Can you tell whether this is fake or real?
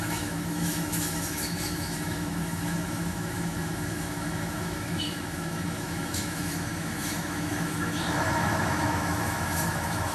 fake